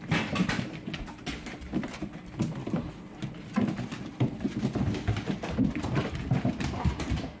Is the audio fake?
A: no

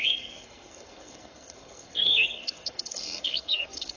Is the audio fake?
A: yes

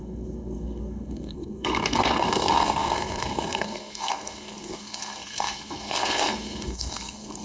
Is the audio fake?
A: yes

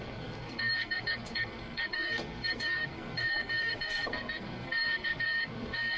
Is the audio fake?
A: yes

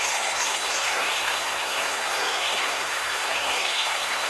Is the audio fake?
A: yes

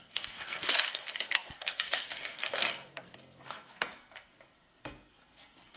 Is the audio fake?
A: yes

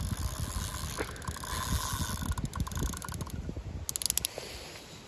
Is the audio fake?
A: no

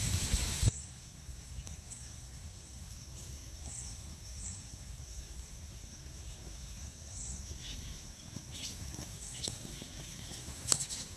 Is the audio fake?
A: yes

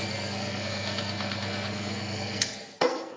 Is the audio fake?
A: yes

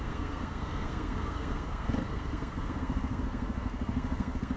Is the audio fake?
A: yes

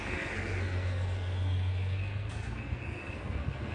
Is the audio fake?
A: yes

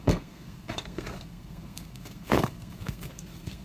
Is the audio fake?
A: yes